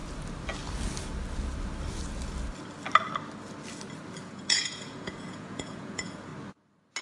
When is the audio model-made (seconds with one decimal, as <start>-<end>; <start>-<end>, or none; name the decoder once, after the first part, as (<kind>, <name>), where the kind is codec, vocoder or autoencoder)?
4.2-6.3 (vocoder, Vocos)